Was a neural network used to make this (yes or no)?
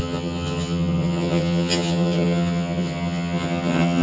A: yes